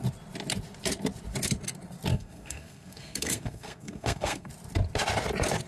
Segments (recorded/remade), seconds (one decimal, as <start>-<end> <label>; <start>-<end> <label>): 0.0-2.1 recorded; 2.1-4.5 remade; 4.5-5.7 recorded